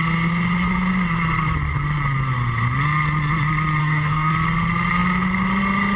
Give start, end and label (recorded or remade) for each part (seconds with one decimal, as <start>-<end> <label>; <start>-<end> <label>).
0.0-3.8 recorded; 3.8-4.3 remade; 4.3-6.0 recorded